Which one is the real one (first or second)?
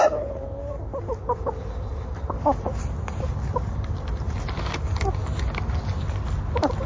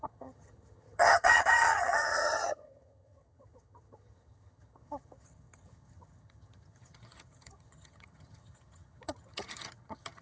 first